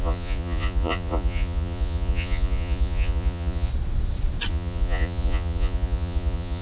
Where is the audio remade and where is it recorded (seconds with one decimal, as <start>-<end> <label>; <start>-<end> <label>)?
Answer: 0.0-3.7 remade; 3.7-4.5 recorded; 4.5-6.6 remade